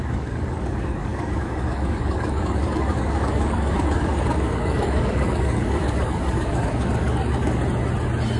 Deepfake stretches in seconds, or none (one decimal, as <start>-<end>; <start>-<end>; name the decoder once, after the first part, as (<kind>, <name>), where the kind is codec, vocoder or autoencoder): 0.0-7.6 (codec, DAC)

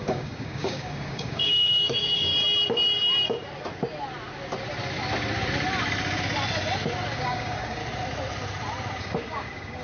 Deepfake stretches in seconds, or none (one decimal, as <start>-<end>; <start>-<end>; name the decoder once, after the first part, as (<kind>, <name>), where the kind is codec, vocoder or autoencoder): 0.0-2.3 (codec, DAC); 7.2-7.8; 9.0-9.8

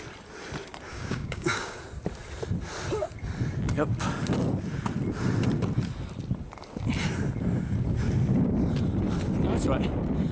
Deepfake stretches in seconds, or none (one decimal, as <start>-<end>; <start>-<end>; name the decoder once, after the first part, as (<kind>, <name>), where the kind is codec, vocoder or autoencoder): 0.9-1.8 (codec, DAC)

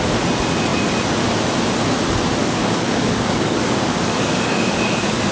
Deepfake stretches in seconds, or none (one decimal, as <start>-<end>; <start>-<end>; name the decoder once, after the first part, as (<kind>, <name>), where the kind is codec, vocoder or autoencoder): 2.4-5.3 (codec, DAC)

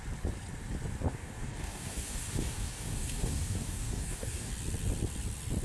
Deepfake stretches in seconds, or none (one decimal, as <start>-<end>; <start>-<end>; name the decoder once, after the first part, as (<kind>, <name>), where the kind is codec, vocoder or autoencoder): 1.1-4.5 (codec, DAC)

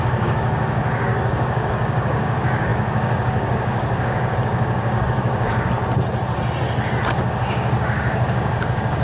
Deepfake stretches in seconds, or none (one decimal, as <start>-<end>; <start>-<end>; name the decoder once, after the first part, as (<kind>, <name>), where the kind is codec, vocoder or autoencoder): 0.0-5.8 (codec, DAC); 7.2-9.0